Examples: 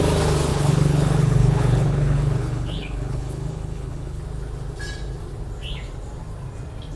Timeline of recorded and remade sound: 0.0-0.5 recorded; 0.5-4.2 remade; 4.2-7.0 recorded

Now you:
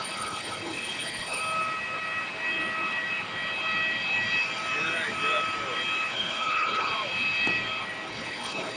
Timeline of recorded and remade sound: 0.0-1.4 remade; 1.4-6.1 recorded; 6.1-6.9 remade; 6.9-8.1 recorded; 8.1-8.8 remade

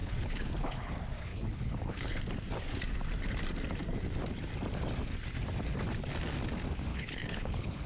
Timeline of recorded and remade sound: 0.0-0.9 remade; 0.9-1.3 recorded; 1.3-2.2 remade; 2.2-6.9 recorded; 6.9-7.9 remade

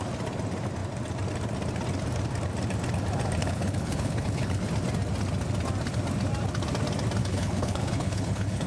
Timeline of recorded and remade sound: 0.0-3.4 recorded; 3.4-4.6 remade; 4.6-7.2 recorded; 7.2-8.7 remade